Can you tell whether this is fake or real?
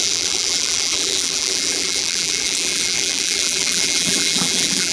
fake